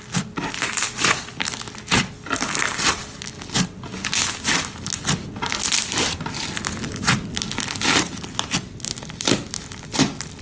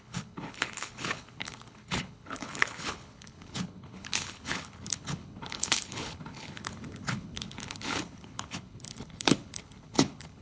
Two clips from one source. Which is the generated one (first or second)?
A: second